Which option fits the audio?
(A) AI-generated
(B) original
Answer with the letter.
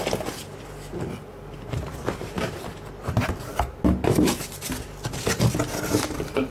B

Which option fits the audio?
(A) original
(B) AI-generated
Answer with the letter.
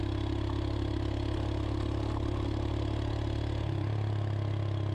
A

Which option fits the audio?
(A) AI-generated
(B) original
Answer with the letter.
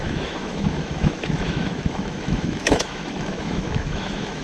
A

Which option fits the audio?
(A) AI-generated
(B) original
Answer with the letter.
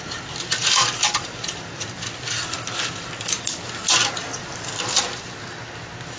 B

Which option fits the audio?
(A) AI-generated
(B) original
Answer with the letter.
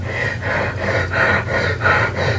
B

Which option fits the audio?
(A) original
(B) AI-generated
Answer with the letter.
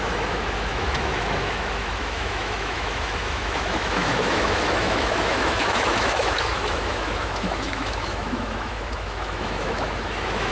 B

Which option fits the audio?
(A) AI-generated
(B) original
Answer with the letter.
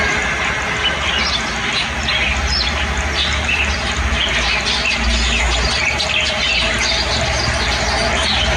B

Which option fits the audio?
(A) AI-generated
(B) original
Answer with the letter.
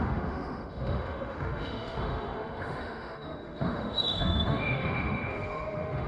A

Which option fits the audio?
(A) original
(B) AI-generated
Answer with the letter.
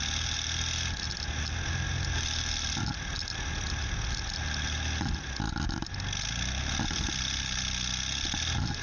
A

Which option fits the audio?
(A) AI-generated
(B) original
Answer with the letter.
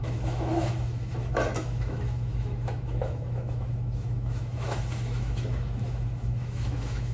A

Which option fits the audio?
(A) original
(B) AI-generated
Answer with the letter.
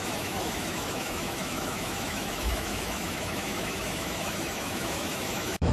B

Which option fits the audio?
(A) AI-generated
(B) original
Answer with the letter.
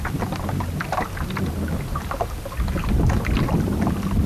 B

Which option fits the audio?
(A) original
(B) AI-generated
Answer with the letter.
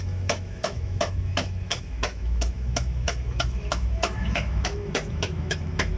B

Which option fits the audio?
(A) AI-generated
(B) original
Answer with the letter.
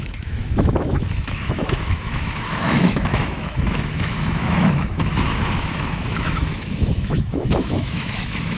A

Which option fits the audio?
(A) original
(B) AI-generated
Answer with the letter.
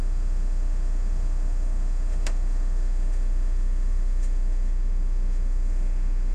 B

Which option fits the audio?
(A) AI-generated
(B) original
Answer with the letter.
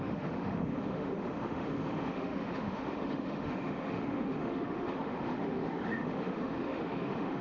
A